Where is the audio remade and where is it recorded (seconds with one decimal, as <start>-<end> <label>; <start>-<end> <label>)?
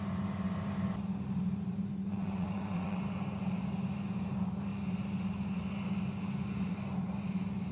0.0-2.0 recorded; 2.0-3.0 remade; 3.0-7.7 recorded